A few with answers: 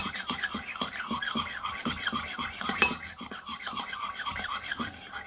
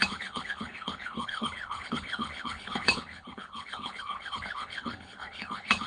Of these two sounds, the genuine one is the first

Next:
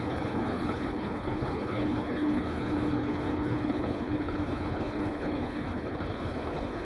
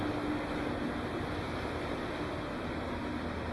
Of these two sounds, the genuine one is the second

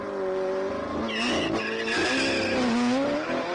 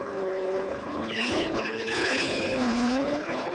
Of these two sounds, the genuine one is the first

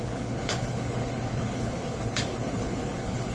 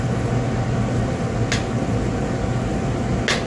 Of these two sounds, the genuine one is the second